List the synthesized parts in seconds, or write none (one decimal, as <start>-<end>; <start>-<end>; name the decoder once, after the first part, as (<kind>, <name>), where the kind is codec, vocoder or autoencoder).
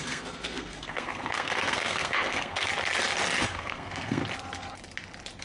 0.0-2.7 (codec, SNAC); 3.4-4.2